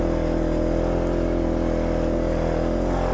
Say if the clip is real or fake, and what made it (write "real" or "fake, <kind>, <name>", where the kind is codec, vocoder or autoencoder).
real